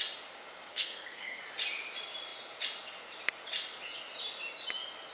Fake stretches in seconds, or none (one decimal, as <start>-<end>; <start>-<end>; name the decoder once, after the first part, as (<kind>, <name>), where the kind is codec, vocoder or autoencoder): 0.7-1.4 (codec, SNAC)